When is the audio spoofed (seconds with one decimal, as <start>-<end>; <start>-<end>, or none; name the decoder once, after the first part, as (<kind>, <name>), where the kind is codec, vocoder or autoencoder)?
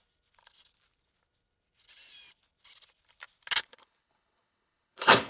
3.6-5.3 (codec, HILCodec)